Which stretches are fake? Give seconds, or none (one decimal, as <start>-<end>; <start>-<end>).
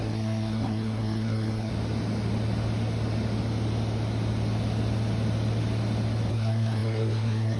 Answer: 0.0-1.7; 6.3-7.6